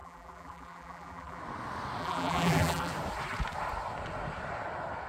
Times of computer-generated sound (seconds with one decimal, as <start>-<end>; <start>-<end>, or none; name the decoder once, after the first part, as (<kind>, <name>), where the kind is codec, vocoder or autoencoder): 0.0-1.4 (vocoder, BigVGAN v2); 2.0-2.9